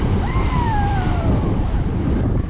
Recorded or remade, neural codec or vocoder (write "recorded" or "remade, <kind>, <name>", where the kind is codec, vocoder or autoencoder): remade, vocoder, BigVGAN v2